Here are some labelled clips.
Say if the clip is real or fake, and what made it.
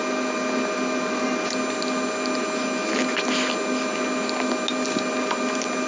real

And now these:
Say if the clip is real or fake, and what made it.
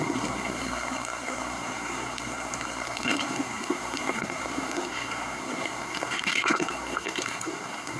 fake, codec, SNAC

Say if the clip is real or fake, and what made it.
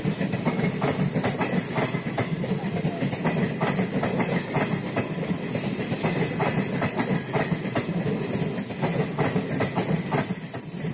real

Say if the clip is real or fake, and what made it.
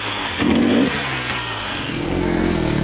fake, codec, SNAC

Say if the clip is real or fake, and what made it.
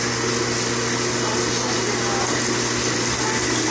real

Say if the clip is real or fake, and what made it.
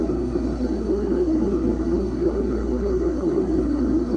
fake, codec, SNAC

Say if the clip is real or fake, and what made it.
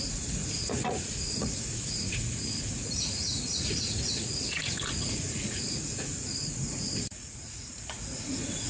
fake, vocoder, Vocos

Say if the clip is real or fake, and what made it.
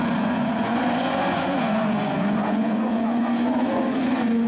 fake, vocoder, Vocos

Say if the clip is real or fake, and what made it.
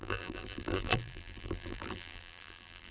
fake, vocoder, BigVGAN v2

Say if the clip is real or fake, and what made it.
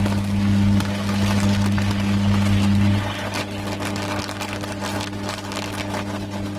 real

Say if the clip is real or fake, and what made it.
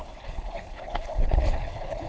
fake, codec, HILCodec